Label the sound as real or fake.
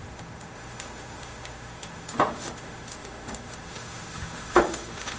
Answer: fake